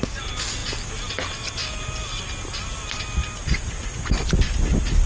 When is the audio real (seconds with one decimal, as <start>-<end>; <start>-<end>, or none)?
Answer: 0.0-5.1